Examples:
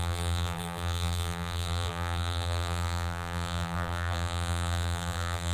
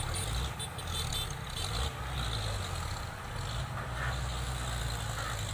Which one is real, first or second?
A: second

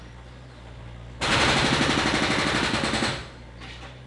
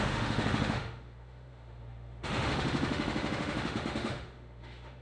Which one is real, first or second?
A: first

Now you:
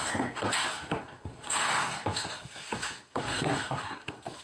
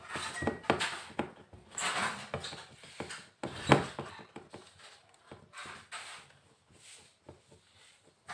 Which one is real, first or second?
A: second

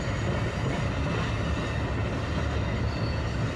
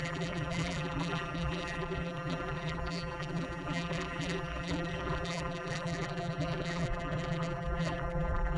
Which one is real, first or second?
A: first